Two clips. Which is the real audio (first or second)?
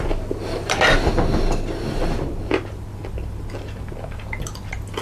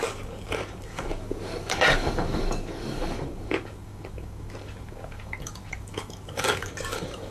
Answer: first